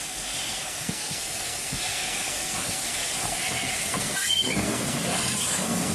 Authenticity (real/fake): fake